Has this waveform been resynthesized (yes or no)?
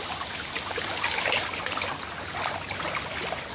no